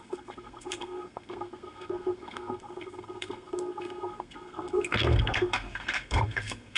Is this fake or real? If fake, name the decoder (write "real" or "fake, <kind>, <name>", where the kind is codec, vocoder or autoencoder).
fake, codec, SNAC